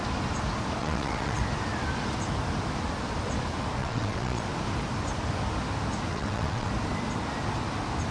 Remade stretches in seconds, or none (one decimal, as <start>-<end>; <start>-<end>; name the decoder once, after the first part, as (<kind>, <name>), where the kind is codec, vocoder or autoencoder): 0.8-1.4 (vocoder, WaveNeXt); 3.8-4.4; 6.1-6.7